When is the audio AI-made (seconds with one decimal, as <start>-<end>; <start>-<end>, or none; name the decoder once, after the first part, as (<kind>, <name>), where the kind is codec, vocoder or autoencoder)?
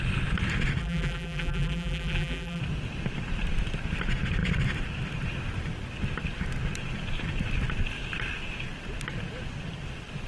0.8-2.6 (vocoder, BigVGAN v2)